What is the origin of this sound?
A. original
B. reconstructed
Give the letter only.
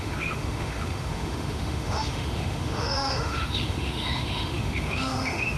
B